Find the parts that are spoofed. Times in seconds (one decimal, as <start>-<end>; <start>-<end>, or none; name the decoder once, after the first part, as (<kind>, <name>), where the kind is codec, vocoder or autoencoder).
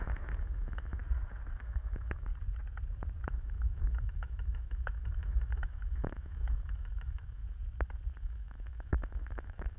0.0-1.0 (autoencoder, DAC-VAE); 1.6-2.3; 3.3-7.4; 8.2-9.8